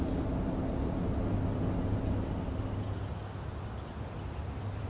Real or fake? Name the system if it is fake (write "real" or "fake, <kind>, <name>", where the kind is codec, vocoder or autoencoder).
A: real